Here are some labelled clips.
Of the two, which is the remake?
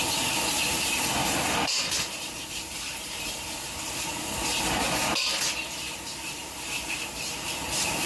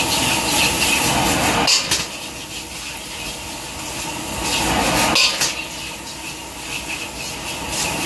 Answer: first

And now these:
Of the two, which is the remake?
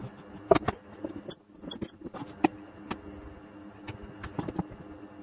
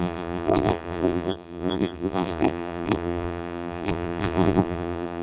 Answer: second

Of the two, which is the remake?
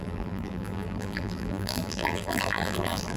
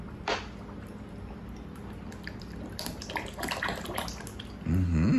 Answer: first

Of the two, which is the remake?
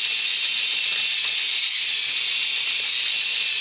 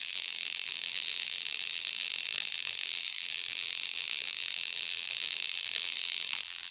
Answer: second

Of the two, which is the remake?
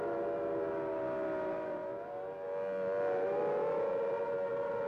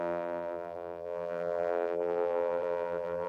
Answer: second